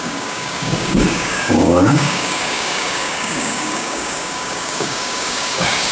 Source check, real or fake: fake